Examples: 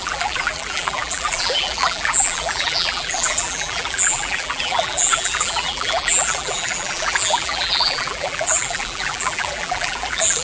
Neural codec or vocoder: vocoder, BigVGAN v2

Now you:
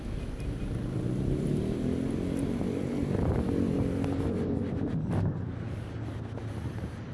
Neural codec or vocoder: none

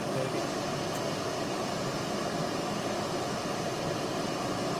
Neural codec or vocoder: none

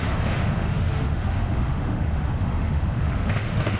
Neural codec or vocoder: autoencoder, DAC-VAE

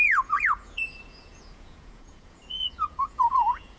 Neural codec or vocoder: vocoder, Vocos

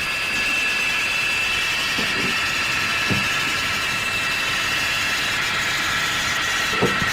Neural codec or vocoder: none